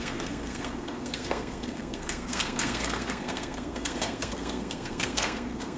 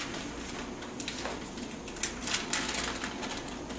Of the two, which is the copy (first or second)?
first